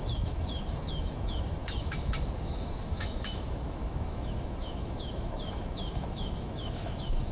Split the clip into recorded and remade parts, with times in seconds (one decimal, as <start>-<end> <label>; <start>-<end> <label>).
0.0-7.3 remade